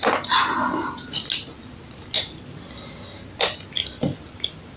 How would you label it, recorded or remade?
recorded